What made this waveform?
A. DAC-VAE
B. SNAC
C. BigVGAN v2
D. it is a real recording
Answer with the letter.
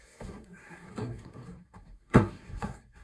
B